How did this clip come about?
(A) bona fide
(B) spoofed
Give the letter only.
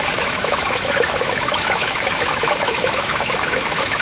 B